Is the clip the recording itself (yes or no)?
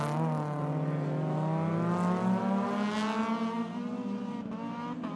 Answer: yes